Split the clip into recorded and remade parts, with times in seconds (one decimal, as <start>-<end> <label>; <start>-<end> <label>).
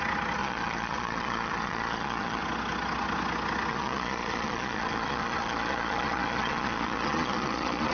0.0-0.4 recorded; 0.4-2.4 remade; 2.4-3.7 recorded; 3.7-7.9 remade